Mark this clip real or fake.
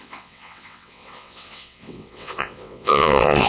fake